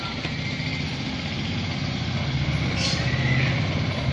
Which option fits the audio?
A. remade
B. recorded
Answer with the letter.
B